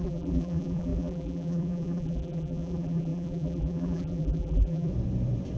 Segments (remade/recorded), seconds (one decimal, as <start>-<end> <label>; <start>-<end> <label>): 0.0-4.9 remade; 4.9-5.6 recorded